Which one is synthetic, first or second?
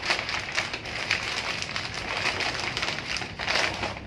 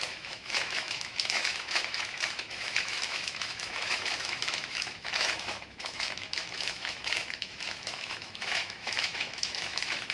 second